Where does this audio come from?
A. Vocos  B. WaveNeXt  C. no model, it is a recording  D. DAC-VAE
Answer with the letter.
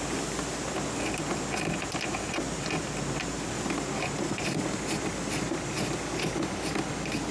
C